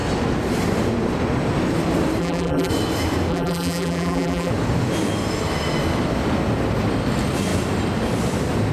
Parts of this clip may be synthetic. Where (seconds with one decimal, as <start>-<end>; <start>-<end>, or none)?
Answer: 2.2-2.7; 3.3-4.5